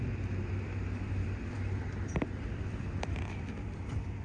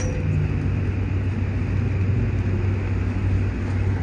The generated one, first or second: first